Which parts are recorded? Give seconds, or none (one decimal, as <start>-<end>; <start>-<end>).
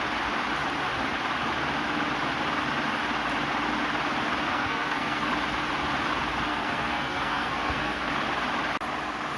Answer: 0.0-4.5; 5.3-6.5; 8.1-9.4